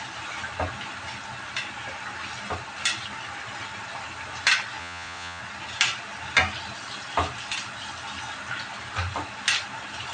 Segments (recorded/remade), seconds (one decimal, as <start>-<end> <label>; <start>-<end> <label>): 0.0-4.8 recorded; 4.8-5.4 remade; 5.4-10.1 recorded